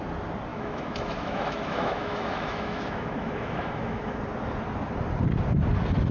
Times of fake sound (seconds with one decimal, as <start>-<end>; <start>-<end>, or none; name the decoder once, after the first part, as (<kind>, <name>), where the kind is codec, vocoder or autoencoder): 0.5-4.2 (autoencoder, DAC-VAE)